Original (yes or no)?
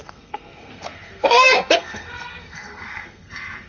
no